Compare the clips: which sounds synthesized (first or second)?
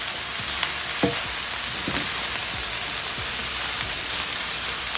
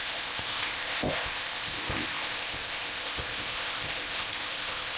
second